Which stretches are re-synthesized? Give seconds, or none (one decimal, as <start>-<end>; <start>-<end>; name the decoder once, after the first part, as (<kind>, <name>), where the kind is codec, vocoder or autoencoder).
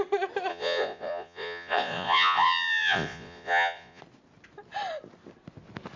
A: 0.5-4.0 (vocoder, Vocos)